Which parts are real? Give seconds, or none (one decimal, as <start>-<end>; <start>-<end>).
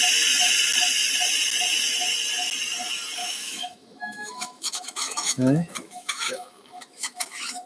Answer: 0.0-3.2